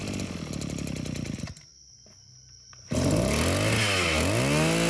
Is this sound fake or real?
real